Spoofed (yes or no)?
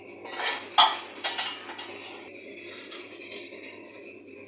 no